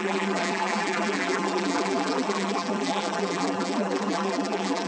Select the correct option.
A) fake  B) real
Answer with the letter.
A